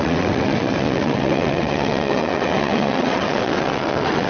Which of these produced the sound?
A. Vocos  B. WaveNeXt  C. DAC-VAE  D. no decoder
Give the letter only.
B